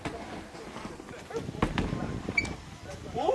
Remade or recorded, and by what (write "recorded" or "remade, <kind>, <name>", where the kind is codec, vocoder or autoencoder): recorded